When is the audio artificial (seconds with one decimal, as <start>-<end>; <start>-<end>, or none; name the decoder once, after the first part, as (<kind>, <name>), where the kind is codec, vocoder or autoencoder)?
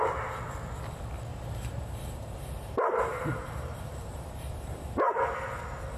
1.3-4.9 (vocoder, BigVGAN v2)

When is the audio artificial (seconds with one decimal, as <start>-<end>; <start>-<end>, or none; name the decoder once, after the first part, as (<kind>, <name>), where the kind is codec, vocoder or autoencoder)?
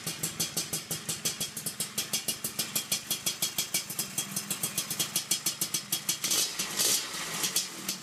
6.5-7.3 (vocoder, BigVGAN v2)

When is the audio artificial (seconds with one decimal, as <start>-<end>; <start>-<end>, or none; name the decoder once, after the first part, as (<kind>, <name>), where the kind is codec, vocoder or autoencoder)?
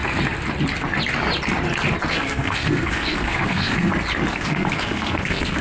2.1-3.9 (codec, SNAC); 4.3-5.6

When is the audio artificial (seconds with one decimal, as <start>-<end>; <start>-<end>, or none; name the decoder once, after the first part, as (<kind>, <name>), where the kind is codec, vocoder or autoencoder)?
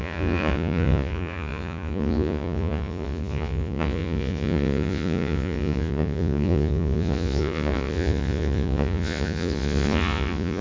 0.0-10.6 (vocoder, Vocos)